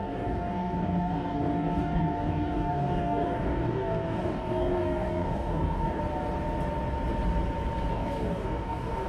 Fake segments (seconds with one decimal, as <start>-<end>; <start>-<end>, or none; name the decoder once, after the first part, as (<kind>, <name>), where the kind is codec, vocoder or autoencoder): 0.0-6.0 (codec, DAC); 7.9-9.1